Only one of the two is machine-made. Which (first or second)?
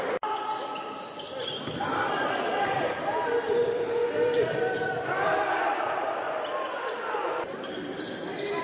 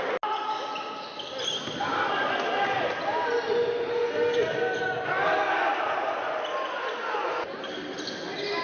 first